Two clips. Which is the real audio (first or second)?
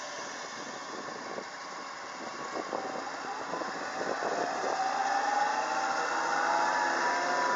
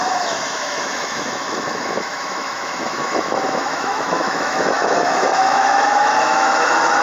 first